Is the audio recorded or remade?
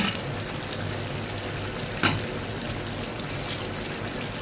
recorded